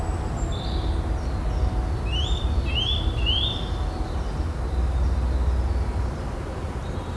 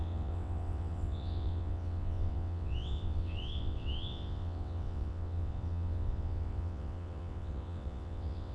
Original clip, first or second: first